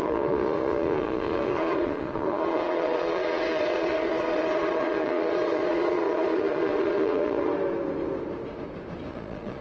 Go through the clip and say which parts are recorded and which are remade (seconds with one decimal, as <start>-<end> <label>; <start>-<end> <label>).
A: 0.0-7.5 remade; 7.5-9.1 recorded; 9.1-9.6 remade